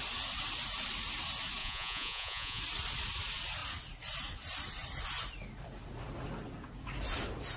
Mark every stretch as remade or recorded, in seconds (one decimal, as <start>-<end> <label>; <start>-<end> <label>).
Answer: 0.0-1.6 recorded; 1.6-2.6 remade; 2.6-7.6 recorded